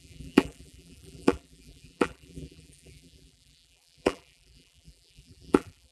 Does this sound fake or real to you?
fake